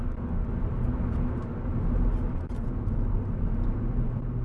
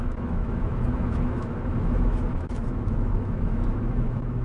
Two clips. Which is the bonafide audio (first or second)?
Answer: first